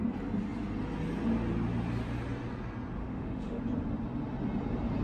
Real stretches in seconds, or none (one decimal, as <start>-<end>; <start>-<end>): 0.0-3.0; 3.6-5.0